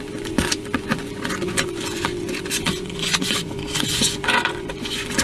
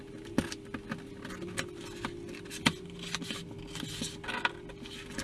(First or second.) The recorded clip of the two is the second